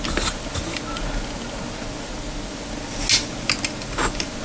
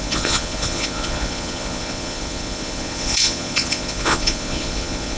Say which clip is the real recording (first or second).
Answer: first